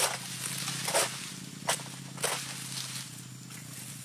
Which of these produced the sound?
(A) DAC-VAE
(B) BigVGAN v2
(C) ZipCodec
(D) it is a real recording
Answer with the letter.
D